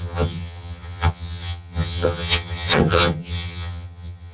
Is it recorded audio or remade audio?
remade